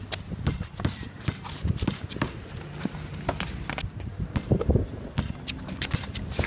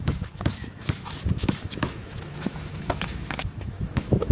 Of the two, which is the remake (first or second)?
second